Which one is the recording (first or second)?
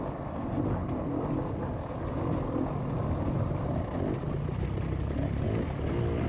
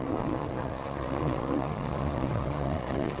first